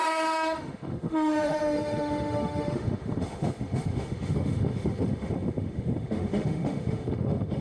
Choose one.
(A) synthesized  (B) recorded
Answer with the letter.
A